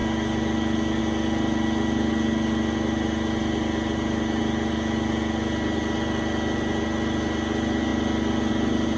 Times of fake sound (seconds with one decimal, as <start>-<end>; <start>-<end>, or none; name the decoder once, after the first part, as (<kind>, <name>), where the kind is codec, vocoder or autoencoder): none